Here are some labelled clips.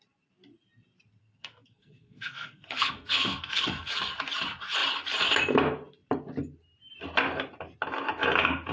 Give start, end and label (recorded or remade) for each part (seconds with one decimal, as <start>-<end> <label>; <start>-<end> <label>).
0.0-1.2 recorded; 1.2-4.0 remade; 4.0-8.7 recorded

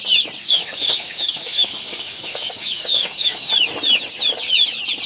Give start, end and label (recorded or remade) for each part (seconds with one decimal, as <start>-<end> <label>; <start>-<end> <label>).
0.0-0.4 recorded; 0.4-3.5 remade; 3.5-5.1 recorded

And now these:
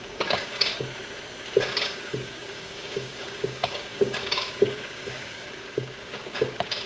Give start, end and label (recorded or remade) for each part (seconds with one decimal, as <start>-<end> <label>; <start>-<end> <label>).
0.0-0.7 remade; 0.7-1.6 recorded; 1.6-6.9 remade

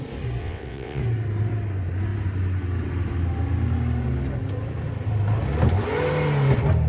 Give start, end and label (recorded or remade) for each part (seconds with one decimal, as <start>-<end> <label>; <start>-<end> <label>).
0.0-0.4 recorded; 0.4-1.0 remade; 1.0-6.9 recorded